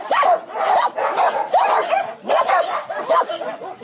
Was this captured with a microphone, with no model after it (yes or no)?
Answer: yes